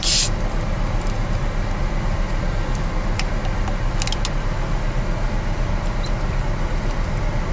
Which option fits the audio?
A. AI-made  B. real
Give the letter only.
B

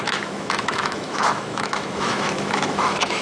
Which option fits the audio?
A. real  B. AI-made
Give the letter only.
B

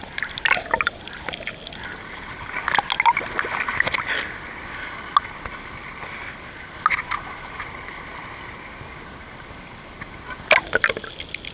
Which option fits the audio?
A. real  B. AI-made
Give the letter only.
A